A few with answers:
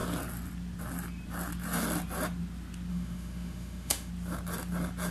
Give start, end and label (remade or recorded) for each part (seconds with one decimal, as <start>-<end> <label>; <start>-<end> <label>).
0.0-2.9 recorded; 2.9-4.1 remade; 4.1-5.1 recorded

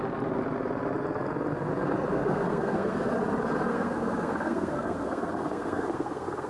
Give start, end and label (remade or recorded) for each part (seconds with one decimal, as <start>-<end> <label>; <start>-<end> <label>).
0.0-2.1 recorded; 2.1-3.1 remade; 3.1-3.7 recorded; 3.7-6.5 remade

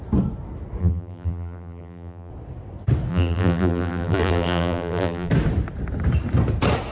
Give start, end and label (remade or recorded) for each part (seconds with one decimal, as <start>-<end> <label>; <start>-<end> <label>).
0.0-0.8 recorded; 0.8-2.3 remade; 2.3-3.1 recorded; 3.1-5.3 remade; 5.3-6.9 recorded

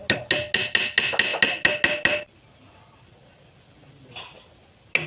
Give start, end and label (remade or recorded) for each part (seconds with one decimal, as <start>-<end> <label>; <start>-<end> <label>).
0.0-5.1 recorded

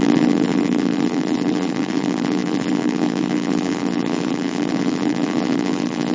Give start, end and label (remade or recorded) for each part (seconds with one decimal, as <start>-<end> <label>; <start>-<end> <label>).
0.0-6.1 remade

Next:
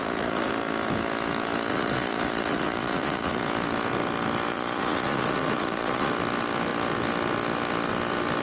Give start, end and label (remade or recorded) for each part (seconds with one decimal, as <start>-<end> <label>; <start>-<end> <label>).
0.0-0.5 remade; 0.5-1.7 recorded; 1.7-3.4 remade; 3.4-4.5 recorded; 4.5-6.1 remade; 6.1-8.4 recorded

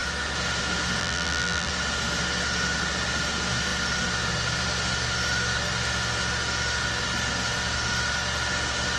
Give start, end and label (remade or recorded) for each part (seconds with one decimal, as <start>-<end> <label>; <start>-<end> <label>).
0.0-1.0 recorded; 1.0-1.7 remade; 1.7-9.0 recorded